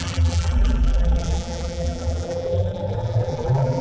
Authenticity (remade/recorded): remade